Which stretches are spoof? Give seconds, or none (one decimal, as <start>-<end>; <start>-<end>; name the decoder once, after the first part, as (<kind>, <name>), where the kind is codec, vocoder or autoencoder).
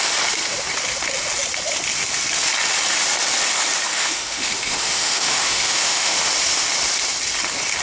3.9-6.3 (autoencoder, DAC-VAE)